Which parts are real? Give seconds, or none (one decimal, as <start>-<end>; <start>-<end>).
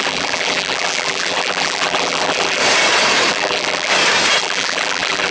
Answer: 2.6-3.3; 3.9-4.4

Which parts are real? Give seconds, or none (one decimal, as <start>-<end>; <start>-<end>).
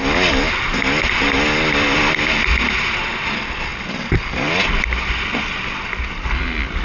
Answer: 0.0-6.8